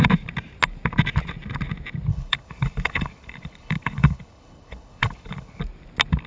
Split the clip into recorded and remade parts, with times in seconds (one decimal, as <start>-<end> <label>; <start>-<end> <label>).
0.0-2.1 recorded; 2.1-5.6 remade; 5.6-6.3 recorded